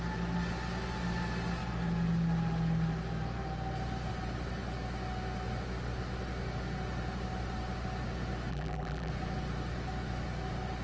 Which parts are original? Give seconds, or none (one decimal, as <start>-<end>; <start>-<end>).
0.0-8.5; 9.1-10.8